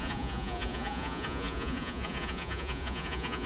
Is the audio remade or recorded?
remade